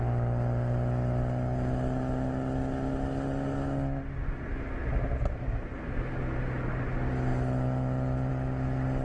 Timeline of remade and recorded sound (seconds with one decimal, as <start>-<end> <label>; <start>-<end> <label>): 0.0-9.0 recorded